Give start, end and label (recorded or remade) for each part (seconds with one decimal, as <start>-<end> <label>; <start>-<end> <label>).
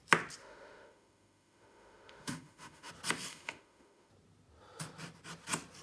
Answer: 0.0-0.4 recorded; 0.4-2.9 remade; 2.9-3.3 recorded; 3.3-4.1 remade; 4.1-5.8 recorded